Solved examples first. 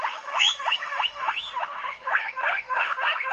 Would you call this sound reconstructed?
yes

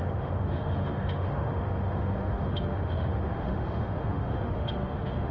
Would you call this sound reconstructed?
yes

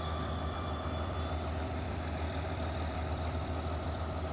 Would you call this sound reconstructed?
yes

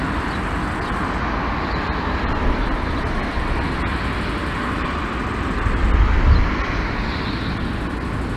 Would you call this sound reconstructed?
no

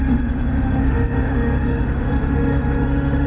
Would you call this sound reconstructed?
yes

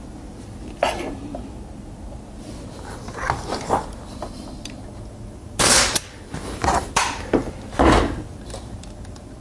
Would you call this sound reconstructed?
no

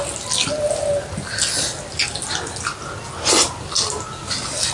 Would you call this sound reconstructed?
no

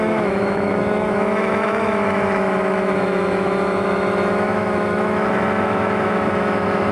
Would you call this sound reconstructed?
yes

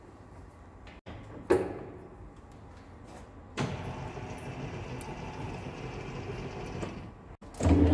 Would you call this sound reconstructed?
no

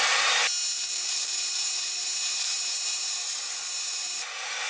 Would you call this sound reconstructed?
yes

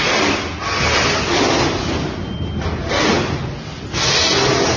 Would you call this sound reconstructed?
no